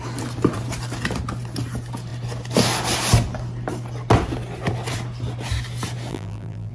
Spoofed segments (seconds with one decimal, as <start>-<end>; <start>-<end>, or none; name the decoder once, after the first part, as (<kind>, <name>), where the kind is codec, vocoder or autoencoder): 6.1-6.7 (vocoder, BigVGAN v2)